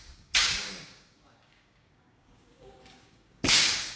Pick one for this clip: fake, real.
fake